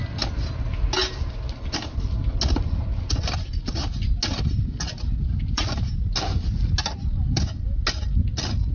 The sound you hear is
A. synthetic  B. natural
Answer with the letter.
B